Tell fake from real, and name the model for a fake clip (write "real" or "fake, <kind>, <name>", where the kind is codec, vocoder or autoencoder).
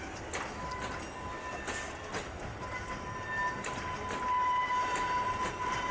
real